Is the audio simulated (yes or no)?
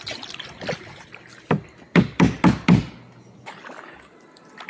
no